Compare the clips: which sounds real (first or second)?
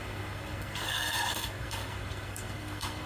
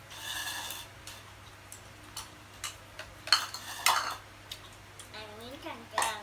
second